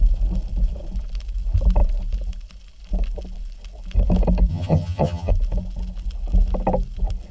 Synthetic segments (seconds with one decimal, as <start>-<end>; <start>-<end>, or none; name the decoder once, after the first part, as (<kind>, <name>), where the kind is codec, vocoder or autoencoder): 4.5-5.3 (vocoder, HiFi-GAN)